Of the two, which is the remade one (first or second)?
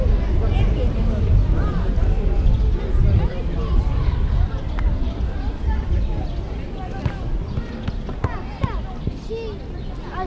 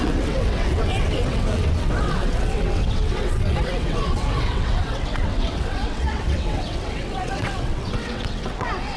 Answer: second